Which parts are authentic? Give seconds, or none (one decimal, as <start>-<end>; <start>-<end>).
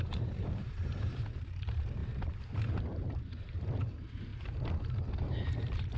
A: 4.3-5.2